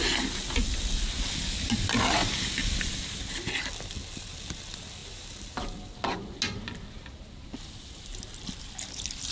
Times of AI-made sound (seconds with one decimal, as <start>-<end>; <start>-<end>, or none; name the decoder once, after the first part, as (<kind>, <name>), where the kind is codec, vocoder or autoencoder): 2.2-2.9 (vocoder, BigVGAN v2)